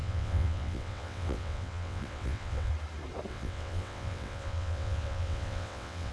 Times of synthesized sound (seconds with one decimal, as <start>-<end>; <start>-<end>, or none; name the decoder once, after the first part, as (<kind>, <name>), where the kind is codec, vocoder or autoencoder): 0.0-2.7 (vocoder, WaveNeXt); 3.3-6.1